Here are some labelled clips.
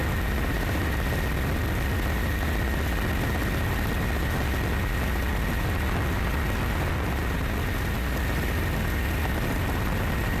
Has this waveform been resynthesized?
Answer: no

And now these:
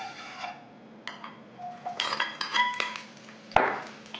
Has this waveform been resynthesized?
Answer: no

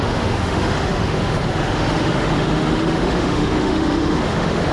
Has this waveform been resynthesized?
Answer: yes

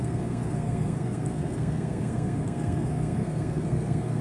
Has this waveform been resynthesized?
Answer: yes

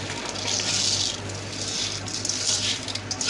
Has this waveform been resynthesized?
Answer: no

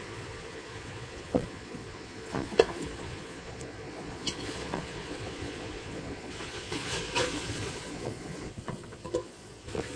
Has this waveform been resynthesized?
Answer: yes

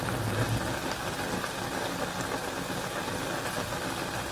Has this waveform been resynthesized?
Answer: no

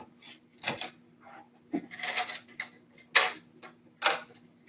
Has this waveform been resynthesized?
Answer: no